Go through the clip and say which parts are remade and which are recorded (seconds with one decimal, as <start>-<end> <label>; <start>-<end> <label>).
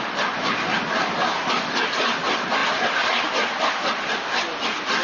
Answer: 0.0-5.0 recorded